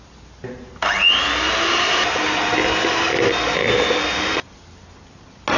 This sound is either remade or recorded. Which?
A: recorded